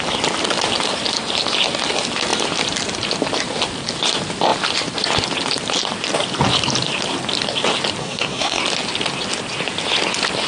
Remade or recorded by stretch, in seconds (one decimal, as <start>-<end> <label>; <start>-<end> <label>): 0.0-8.0 recorded; 8.0-8.6 remade; 8.6-10.5 recorded